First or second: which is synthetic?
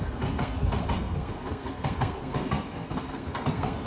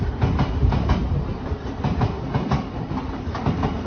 first